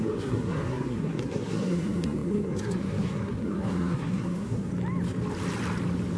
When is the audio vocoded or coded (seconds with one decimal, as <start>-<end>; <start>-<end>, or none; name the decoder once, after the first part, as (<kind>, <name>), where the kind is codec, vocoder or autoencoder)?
0.0-4.7 (codec, SNAC)